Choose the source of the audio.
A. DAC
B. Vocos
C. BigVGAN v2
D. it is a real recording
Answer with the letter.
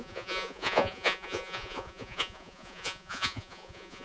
B